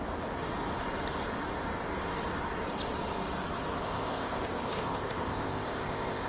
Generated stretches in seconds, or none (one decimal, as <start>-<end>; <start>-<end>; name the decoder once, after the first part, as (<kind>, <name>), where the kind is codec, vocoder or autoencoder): 3.8-6.3 (codec, ZipCodec)